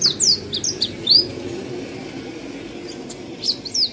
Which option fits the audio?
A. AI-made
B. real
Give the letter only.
B